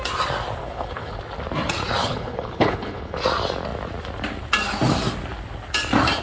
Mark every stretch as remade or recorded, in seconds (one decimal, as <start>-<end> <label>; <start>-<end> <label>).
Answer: 0.0-0.6 recorded; 0.6-1.2 remade; 1.2-2.0 recorded; 2.0-3.2 remade; 3.2-6.2 recorded